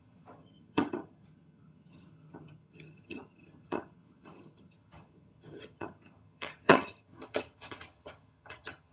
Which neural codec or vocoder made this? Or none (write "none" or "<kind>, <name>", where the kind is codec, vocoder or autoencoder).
vocoder, HiFi-GAN